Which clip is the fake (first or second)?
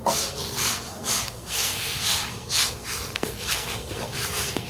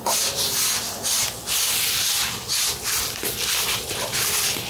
first